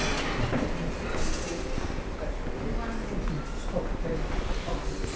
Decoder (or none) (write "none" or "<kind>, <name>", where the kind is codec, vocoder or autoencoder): none